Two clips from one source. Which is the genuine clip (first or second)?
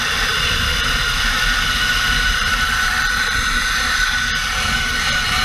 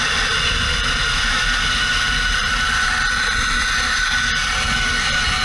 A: second